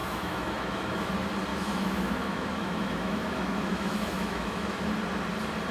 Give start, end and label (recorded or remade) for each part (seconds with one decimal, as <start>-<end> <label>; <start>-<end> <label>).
0.0-1.1 remade; 1.1-1.5 recorded; 1.5-4.9 remade; 4.9-5.7 recorded